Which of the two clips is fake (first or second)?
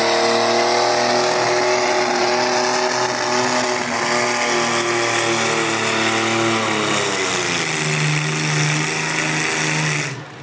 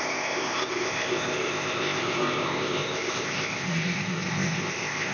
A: second